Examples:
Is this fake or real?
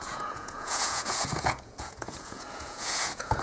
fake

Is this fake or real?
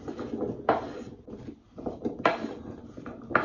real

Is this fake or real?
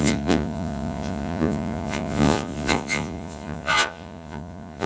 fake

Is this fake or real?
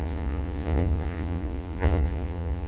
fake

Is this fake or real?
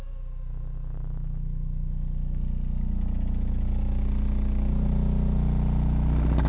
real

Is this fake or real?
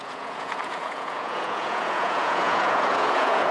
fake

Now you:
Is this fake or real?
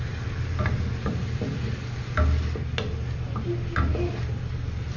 real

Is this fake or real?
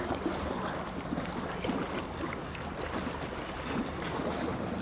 real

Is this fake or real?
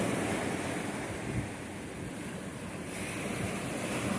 real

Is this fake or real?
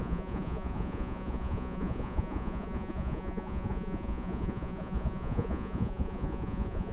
fake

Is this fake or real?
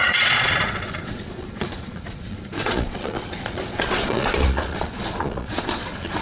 fake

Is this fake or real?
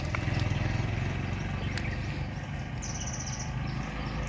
real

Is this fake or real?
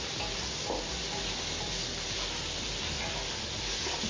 real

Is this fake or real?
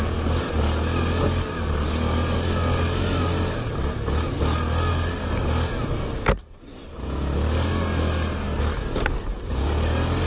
real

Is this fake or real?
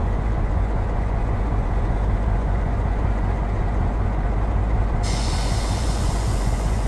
fake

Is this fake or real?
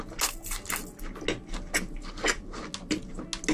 real